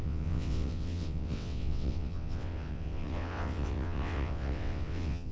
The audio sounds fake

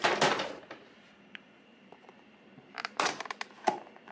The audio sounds fake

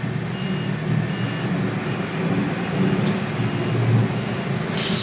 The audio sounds real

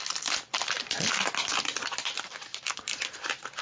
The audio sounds real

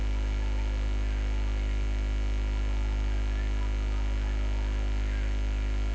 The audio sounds real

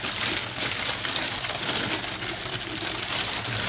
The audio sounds fake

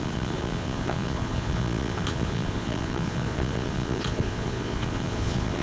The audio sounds fake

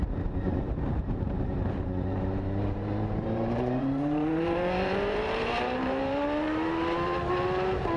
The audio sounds fake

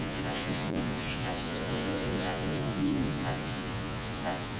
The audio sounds fake